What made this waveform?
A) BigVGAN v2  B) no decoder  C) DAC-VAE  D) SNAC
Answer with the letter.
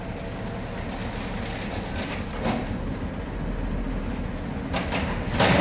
B